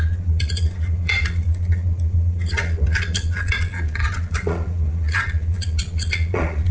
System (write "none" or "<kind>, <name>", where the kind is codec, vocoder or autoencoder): vocoder, Vocos